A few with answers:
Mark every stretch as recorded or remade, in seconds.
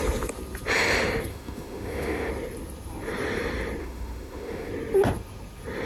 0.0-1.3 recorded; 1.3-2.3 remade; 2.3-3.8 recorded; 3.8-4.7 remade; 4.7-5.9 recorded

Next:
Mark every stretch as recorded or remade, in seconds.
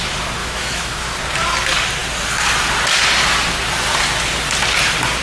0.0-0.4 recorded; 0.4-1.0 remade; 1.0-5.2 recorded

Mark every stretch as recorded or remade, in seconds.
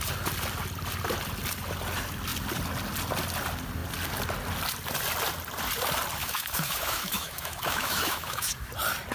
0.0-6.2 recorded; 6.2-8.7 remade; 8.7-9.1 recorded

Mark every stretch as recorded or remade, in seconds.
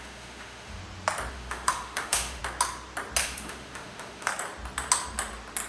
0.0-0.8 remade; 0.8-1.3 recorded; 1.3-2.4 remade; 2.4-3.2 recorded; 3.2-4.3 remade; 4.3-5.7 recorded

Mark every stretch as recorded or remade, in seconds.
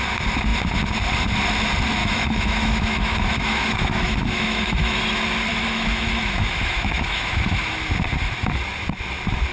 0.0-2.0 recorded; 2.0-5.0 remade; 5.0-5.5 recorded; 5.5-7.7 remade; 7.7-9.5 recorded